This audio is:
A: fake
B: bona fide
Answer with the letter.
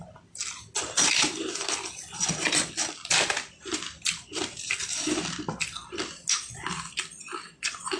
B